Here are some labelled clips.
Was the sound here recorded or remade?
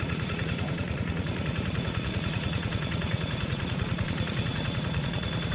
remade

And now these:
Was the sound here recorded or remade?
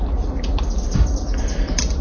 remade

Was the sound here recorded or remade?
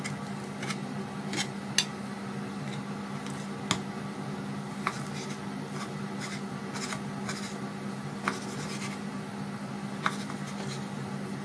recorded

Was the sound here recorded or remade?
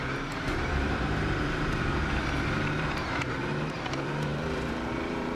remade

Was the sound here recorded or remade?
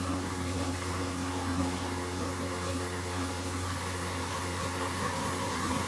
remade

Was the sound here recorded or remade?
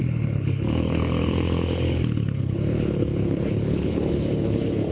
remade